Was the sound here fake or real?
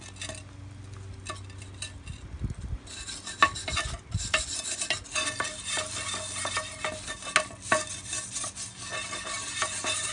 real